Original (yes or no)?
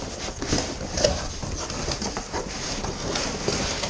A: yes